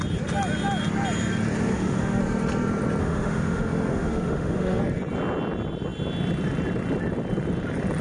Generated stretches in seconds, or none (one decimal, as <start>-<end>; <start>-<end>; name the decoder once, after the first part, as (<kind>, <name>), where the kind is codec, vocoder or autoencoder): 1.7-2.2 (autoencoder, DAC-VAE); 3.0-4.8